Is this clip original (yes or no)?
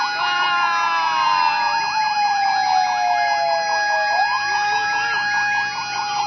yes